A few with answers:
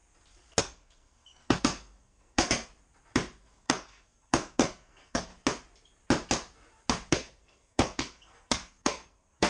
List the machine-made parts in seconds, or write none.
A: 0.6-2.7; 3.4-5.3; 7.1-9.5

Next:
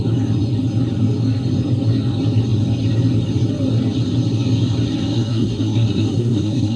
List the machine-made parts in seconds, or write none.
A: 5.1-6.8